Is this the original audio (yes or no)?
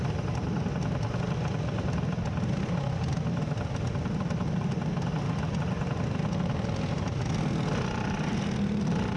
yes